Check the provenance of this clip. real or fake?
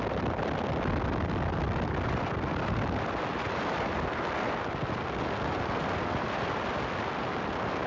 real